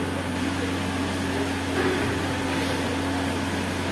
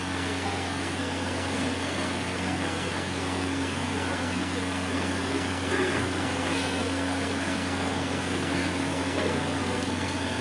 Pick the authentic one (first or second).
first